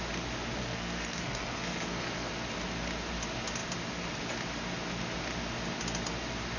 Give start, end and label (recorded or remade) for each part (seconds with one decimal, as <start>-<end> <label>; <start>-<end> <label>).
0.0-0.6 recorded; 0.6-2.3 remade; 2.3-6.6 recorded